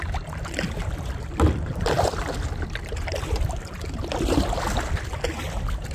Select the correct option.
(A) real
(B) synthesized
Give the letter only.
A